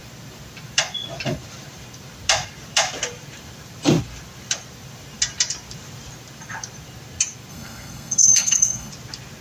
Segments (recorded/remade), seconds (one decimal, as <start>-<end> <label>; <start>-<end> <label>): 0.0-7.5 recorded; 7.5-8.9 remade; 8.9-9.4 recorded